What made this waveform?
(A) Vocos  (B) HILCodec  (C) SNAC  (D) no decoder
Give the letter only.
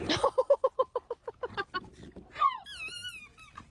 D